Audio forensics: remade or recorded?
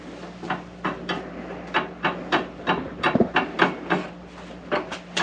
remade